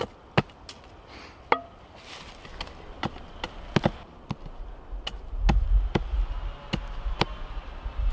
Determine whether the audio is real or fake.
real